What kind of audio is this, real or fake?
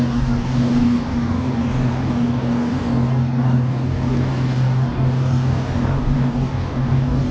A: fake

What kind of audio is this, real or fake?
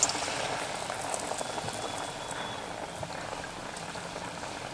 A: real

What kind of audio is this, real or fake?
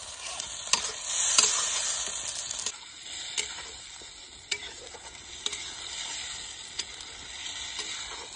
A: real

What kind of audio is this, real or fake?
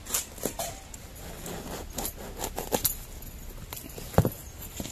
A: real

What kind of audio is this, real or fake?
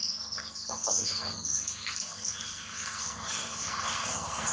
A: fake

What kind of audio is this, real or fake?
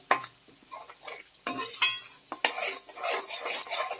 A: real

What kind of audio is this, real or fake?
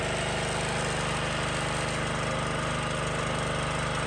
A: real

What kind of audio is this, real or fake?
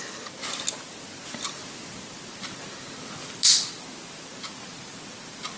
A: real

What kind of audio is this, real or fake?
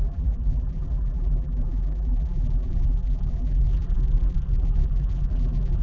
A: fake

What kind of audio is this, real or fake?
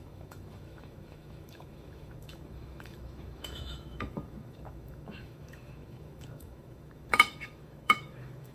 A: fake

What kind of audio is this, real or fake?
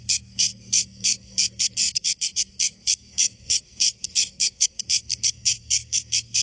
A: fake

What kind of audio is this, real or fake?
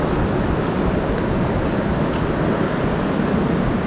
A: real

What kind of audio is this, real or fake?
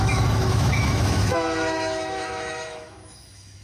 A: fake